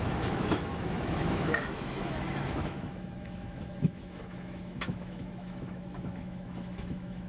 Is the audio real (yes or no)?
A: no